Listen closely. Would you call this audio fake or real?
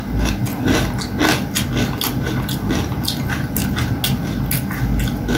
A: real